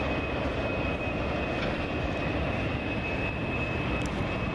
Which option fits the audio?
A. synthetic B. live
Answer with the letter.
B